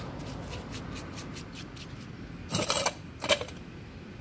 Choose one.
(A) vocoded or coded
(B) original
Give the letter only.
B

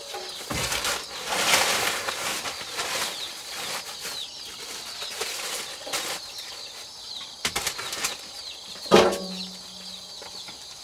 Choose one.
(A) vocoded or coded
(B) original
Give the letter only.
B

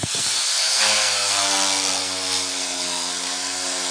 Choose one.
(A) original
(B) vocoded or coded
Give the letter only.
B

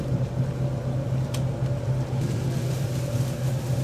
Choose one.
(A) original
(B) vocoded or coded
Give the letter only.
A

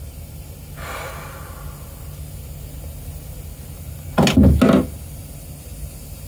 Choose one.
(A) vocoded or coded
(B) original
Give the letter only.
B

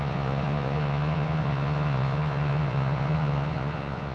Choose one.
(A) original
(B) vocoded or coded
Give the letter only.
B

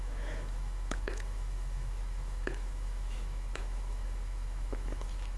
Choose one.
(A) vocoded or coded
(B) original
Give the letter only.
A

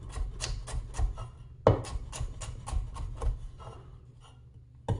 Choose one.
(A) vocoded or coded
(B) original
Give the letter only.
B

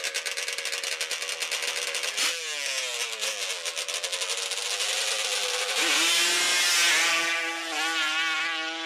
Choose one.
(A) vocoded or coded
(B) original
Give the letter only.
B